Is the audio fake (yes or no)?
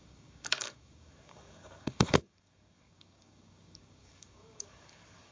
yes